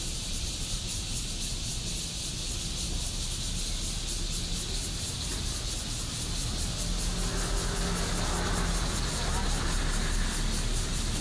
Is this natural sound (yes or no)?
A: yes